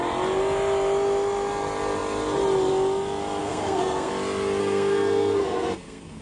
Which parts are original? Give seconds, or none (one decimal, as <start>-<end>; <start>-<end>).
0.0-3.4; 4.1-4.6